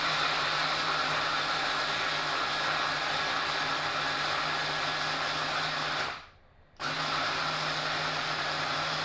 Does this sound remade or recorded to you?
recorded